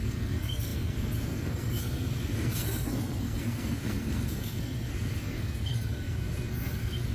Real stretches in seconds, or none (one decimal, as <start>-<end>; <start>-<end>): none